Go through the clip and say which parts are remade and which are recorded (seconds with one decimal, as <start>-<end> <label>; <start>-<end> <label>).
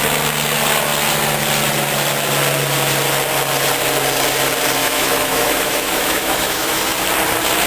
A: 0.0-4.8 recorded; 4.8-6.8 remade; 6.8-7.7 recorded